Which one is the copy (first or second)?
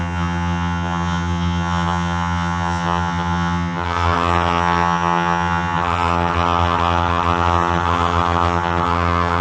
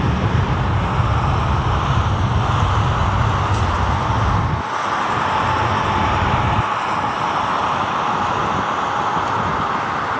first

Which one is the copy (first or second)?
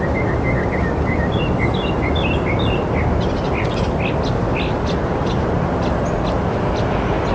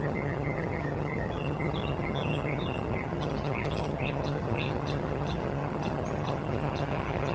second